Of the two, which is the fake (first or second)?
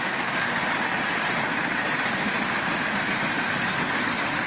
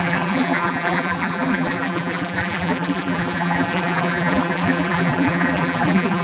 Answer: second